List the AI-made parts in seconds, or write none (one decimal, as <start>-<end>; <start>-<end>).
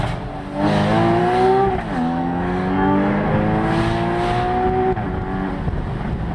1.2-1.7; 2.2-3.3